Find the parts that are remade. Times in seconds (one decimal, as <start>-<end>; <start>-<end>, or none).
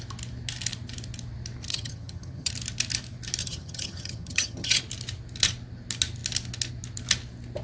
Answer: 1.7-2.5; 3.4-4.8